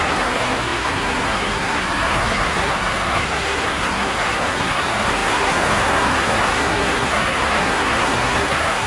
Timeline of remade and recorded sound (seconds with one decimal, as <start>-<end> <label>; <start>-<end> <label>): 0.0-8.9 remade